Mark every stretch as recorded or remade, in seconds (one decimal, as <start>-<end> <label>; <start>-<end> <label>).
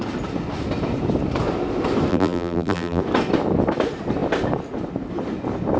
0.0-2.1 recorded; 2.1-3.0 remade; 3.0-5.8 recorded